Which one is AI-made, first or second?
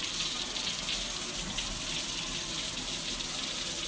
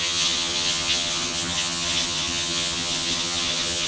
second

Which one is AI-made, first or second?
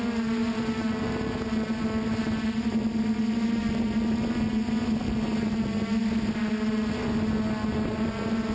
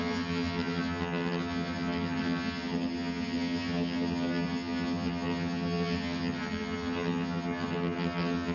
second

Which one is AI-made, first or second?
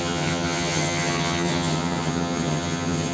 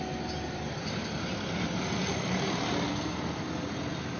first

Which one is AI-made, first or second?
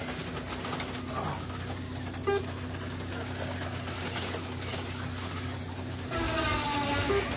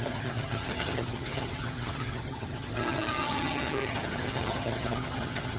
second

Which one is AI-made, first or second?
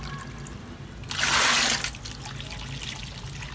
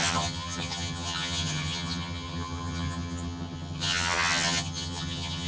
second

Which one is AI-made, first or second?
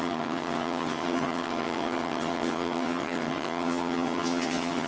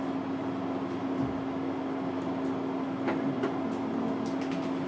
first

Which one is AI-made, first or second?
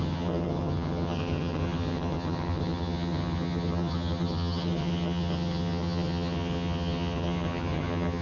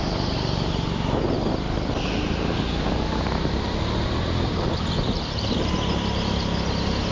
first